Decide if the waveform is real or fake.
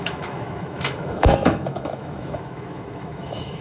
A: fake